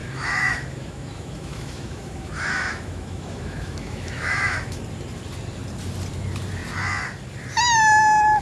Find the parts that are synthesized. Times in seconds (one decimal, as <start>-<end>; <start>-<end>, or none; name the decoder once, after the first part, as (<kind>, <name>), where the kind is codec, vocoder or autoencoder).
0.0-4.8 (autoencoder, DAC-VAE)